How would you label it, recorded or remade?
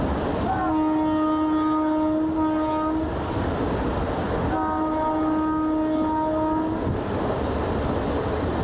recorded